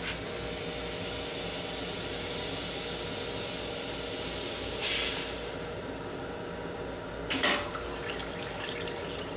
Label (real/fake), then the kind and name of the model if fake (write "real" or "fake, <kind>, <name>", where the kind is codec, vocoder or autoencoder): real